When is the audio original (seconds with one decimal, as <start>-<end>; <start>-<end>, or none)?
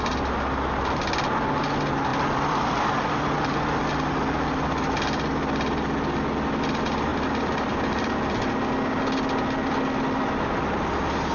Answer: 0.0-2.1; 2.7-7.1; 8.1-11.3